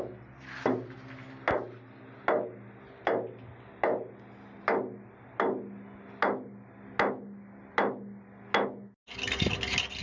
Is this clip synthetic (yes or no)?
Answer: no